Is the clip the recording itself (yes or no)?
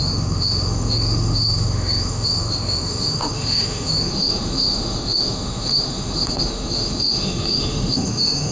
no